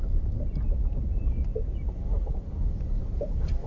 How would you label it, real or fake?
real